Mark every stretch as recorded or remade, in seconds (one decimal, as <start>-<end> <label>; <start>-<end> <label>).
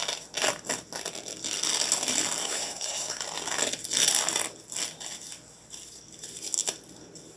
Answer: 0.0-2.4 recorded; 2.4-3.2 remade; 3.2-7.4 recorded